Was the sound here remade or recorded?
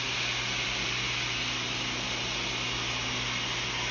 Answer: recorded